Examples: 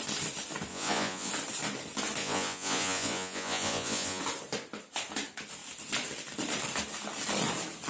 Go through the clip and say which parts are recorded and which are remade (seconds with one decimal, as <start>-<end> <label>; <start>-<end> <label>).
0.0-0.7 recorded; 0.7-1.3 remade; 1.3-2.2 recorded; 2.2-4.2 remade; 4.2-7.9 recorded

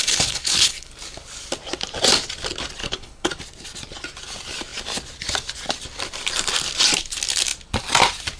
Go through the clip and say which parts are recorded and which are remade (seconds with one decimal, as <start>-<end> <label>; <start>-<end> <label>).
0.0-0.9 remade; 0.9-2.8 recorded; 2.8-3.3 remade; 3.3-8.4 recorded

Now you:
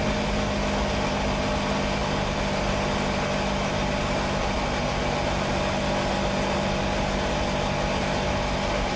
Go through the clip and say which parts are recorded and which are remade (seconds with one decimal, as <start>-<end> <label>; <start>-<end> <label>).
0.0-9.0 recorded

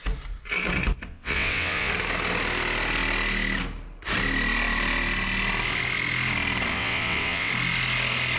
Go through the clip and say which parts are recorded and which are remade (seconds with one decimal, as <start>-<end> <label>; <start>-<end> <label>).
0.0-1.1 recorded; 1.1-1.9 remade; 1.9-6.7 recorded; 6.7-7.5 remade; 7.5-8.4 recorded

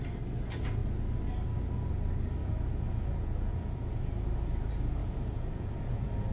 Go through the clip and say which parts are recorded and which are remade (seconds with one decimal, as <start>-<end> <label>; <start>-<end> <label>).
0.0-2.4 recorded; 2.4-4.0 remade; 4.0-5.0 recorded; 5.0-6.3 remade

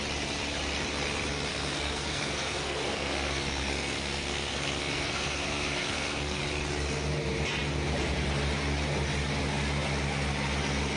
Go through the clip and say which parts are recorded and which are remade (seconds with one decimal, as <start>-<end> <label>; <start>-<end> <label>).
0.0-1.5 recorded; 1.5-6.4 remade; 6.4-11.0 recorded